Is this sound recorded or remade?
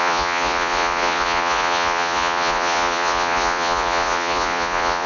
remade